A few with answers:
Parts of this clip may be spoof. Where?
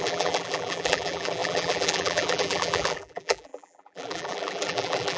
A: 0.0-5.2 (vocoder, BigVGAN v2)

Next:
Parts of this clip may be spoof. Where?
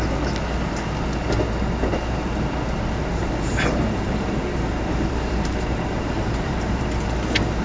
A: 3.1-6.8 (vocoder, BigVGAN v2)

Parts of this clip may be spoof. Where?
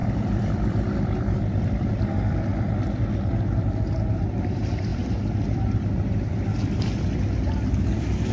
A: 0.0-1.9 (vocoder, BigVGAN v2)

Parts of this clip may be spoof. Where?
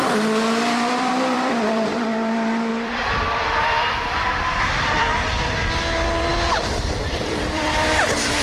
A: 0.0-8.4 (vocoder, BigVGAN v2)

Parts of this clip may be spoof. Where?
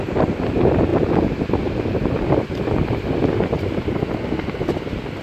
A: none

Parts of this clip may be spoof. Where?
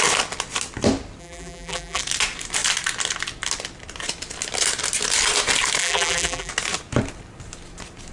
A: 1.2-2.0 (vocoder, BigVGAN v2); 5.8-6.5